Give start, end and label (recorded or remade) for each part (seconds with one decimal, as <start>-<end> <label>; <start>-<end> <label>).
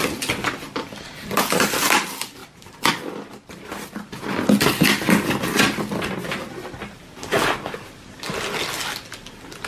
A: 0.0-9.7 recorded